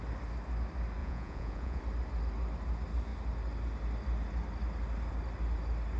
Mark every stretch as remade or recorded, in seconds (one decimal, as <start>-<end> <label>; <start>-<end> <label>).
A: 0.0-1.0 recorded; 1.0-1.8 remade; 1.8-6.0 recorded